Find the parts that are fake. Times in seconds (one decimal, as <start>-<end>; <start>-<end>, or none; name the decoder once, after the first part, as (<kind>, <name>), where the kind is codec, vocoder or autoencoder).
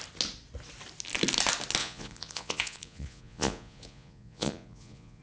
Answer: 1.8-5.2 (vocoder, Vocos)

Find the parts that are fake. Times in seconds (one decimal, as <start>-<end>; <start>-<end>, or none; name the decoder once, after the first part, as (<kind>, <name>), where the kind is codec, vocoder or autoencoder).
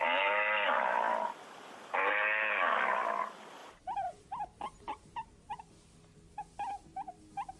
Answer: 3.6-5.6 (vocoder, BigVGAN v2)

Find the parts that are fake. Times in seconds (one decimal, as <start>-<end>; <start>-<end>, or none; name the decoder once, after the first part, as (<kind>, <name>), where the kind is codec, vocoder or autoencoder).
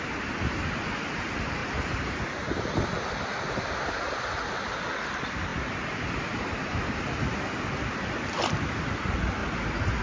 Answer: 9.4-10.0 (vocoder, BigVGAN v2)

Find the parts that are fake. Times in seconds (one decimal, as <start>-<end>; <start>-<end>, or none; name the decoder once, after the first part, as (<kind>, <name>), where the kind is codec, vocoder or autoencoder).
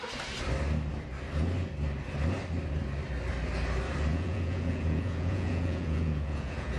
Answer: 4.1-6.8 (vocoder, Vocos)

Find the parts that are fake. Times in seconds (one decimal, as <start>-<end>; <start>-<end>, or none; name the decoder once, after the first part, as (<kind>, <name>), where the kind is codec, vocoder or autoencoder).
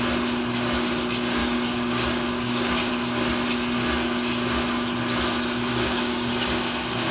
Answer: 1.4-2.9 (codec, DAC); 5.7-6.3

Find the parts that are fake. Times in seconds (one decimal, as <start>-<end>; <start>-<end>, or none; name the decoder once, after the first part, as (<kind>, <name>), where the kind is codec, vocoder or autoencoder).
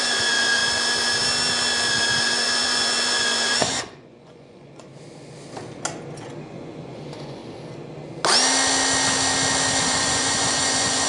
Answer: 0.0-0.6 (vocoder, Vocos); 2.2-4.9; 6.4-7.4; 9.8-11.1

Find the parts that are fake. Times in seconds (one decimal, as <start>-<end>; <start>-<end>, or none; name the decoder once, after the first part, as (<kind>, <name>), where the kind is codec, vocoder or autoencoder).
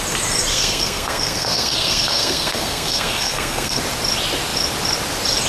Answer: 0.5-3.8 (codec, SNAC)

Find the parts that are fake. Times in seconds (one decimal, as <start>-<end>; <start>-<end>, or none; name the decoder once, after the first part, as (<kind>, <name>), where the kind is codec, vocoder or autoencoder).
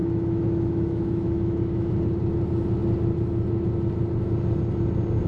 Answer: 0.0-1.9 (autoencoder, DAC-VAE)